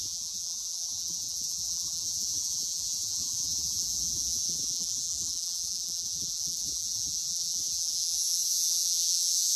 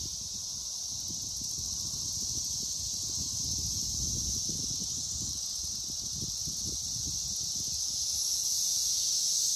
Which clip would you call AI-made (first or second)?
first